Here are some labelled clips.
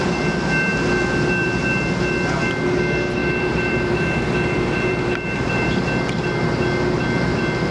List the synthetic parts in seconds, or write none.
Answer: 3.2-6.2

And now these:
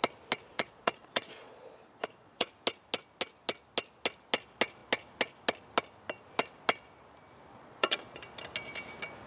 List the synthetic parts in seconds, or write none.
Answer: 0.5-2.5; 7.5-8.2

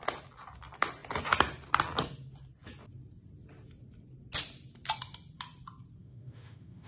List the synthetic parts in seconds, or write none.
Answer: 6.0-6.9

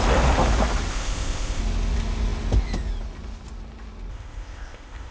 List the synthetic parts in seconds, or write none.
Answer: 0.9-1.6; 4.1-5.1